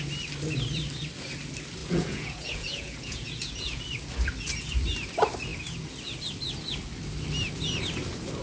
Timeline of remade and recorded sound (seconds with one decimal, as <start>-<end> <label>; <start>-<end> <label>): 0.0-1.8 recorded; 1.8-3.8 remade; 3.8-8.4 recorded